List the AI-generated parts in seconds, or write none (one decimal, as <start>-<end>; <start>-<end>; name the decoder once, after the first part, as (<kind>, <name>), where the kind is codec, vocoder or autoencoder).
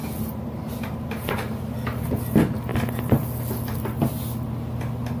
none